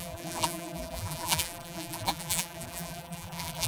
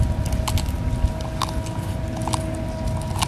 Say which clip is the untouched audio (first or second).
second